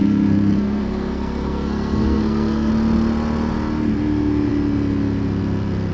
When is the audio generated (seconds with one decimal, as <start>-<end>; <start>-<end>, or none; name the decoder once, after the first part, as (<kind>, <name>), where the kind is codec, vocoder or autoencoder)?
0.0-2.7 (codec, SNAC)